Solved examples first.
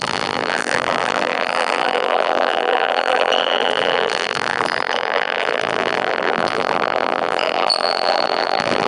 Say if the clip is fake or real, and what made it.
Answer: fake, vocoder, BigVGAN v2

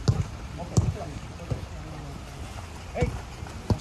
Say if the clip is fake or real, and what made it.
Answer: real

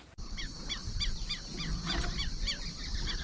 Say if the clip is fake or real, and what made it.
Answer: fake, vocoder, BigVGAN v2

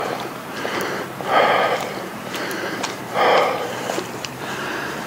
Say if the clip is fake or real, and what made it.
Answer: fake, vocoder, BigVGAN v2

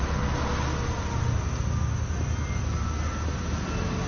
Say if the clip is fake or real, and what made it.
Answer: real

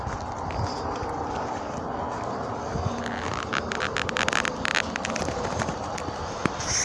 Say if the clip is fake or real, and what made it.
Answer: real